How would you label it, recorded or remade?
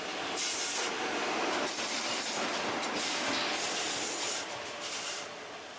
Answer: recorded